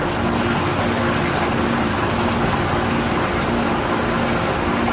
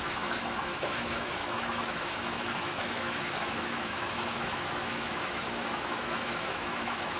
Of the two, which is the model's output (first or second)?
second